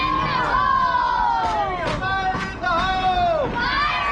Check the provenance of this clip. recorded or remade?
recorded